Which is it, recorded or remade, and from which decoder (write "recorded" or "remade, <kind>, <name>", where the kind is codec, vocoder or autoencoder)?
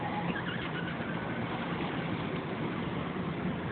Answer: recorded